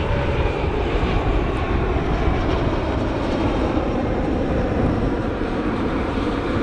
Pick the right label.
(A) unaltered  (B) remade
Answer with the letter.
B